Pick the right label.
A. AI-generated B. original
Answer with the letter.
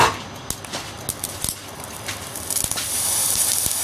B